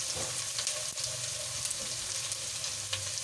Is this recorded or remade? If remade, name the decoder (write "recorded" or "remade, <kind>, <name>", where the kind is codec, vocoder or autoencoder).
recorded